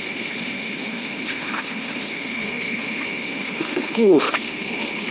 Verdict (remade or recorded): remade